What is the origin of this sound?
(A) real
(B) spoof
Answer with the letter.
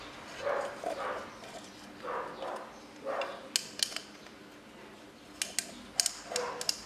A